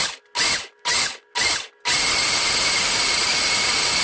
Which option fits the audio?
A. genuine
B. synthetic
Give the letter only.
A